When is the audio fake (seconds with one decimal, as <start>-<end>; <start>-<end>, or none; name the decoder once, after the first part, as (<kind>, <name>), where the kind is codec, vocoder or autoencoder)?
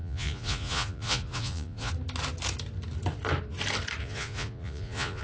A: 0.0-1.9 (vocoder, Vocos); 4.0-5.2